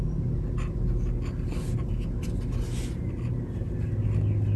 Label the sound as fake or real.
real